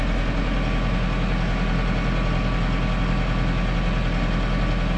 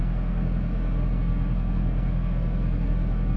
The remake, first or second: second